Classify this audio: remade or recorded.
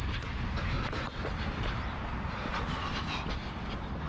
recorded